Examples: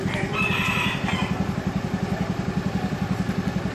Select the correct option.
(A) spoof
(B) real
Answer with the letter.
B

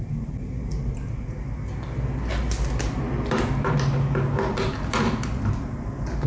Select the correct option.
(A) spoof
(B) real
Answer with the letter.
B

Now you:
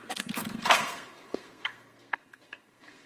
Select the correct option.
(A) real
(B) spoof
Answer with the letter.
B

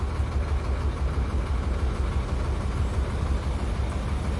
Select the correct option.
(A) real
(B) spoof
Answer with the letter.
A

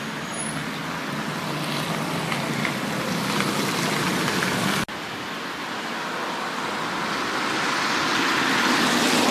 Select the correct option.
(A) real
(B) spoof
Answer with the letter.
A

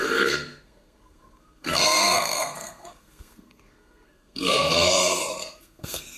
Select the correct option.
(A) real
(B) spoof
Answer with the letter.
B